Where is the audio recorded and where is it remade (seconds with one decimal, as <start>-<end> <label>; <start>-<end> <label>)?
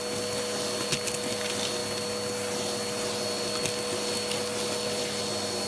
0.0-5.7 recorded